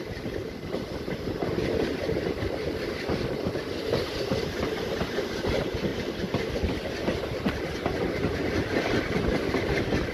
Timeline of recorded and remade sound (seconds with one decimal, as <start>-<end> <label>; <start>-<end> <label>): 0.0-0.4 recorded; 0.4-3.4 remade; 3.4-5.9 recorded; 5.9-6.5 remade; 6.5-10.1 recorded

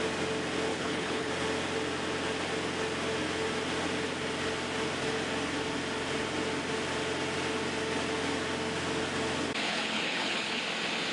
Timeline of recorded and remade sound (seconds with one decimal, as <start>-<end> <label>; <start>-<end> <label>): 0.0-0.7 recorded; 0.7-1.3 remade; 1.3-9.7 recorded; 9.7-10.6 remade; 10.6-11.1 recorded

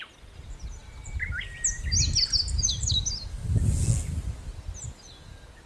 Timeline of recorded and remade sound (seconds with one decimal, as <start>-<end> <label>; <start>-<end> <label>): 0.0-5.7 recorded

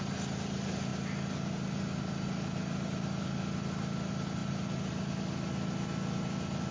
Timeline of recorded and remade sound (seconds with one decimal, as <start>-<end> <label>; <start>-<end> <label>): 0.0-0.9 remade; 0.9-2.3 recorded; 2.3-6.7 remade